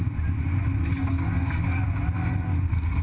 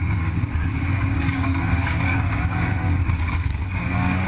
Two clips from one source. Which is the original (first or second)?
first